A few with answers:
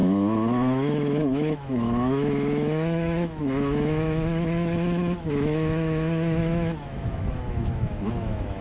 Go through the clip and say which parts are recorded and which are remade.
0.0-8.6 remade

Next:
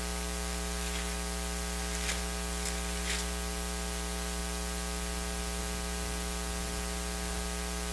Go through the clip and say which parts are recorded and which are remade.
0.0-7.9 recorded

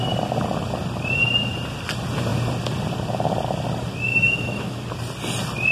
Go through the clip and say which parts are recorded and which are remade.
0.0-4.1 recorded; 4.1-4.8 remade; 4.8-5.7 recorded

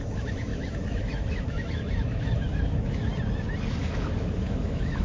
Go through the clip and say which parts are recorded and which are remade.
0.0-3.1 remade; 3.1-3.8 recorded; 3.8-5.0 remade

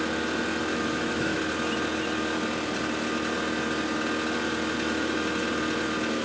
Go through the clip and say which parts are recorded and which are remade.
0.0-0.7 recorded; 0.7-1.4 remade; 1.4-6.2 recorded

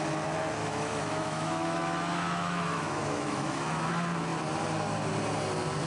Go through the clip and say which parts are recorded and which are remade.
0.0-0.6 recorded; 0.6-3.9 remade; 3.9-5.9 recorded

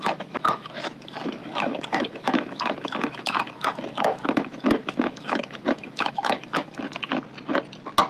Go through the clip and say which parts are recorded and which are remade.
0.0-7.1 remade; 7.1-8.1 recorded